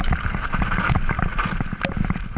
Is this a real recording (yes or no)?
yes